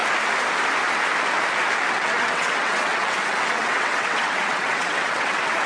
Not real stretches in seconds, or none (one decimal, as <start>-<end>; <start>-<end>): 1.9-5.7